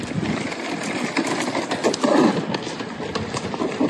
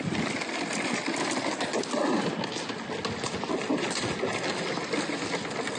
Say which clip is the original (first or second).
second